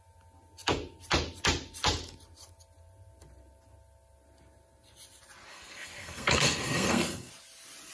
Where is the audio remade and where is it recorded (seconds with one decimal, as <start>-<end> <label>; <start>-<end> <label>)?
0.0-5.5 recorded; 5.5-7.3 remade; 7.3-7.9 recorded